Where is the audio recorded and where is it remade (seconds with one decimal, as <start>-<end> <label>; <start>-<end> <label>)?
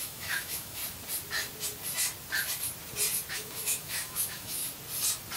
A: 0.0-0.8 remade; 0.8-3.3 recorded; 3.3-4.6 remade; 4.6-5.4 recorded